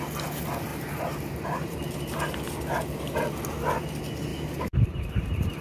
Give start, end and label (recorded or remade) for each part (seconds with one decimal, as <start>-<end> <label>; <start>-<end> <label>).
0.0-0.7 recorded; 0.7-2.0 remade; 2.0-4.3 recorded; 4.3-5.6 remade